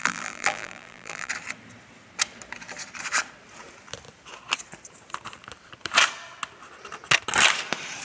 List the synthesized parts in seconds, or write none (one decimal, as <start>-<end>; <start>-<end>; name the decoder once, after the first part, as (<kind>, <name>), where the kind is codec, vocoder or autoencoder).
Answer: 0.0-1.3 (vocoder, BigVGAN v2)

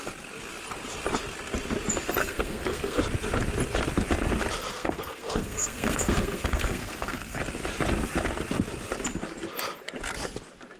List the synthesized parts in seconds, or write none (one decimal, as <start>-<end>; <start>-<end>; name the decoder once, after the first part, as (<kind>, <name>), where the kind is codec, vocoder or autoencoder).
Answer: 2.2-3.0 (codec, SNAC); 4.7-7.4